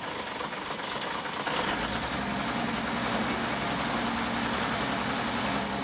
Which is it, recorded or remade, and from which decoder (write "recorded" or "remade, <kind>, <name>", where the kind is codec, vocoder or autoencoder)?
recorded